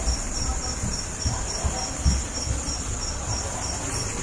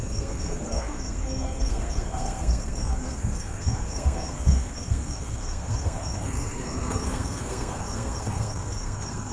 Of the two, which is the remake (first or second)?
second